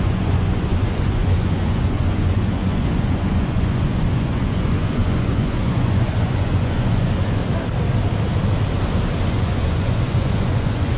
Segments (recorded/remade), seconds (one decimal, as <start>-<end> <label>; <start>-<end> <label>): 0.0-7.4 remade; 7.4-9.2 recorded; 9.2-11.0 remade

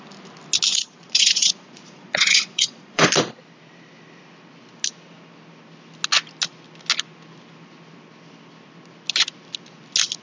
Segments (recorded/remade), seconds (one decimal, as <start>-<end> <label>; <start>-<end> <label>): 0.0-0.7 recorded; 0.7-3.2 remade; 3.2-10.2 recorded